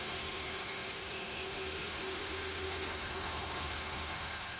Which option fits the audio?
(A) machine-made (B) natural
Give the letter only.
A